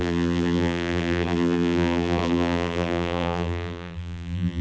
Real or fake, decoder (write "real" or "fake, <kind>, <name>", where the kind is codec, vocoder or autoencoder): fake, vocoder, BigVGAN v2